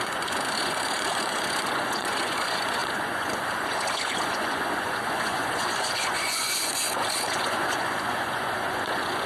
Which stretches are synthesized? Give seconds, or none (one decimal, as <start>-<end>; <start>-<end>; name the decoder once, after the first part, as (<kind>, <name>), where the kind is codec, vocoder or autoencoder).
0.0-9.3 (vocoder, Vocos)